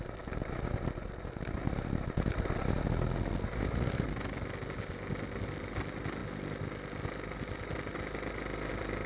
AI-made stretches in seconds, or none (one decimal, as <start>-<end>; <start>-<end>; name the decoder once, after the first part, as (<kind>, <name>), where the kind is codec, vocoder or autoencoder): none